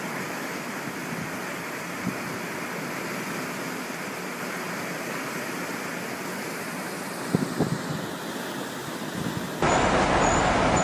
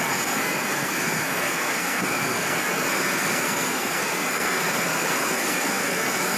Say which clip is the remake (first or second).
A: second